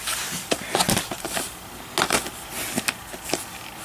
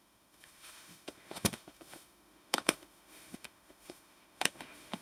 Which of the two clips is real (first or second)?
first